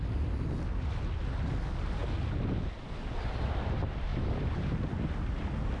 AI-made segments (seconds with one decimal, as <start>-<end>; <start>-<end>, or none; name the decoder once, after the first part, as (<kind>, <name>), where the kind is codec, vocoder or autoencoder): 4.1-4.7 (vocoder, BigVGAN v2)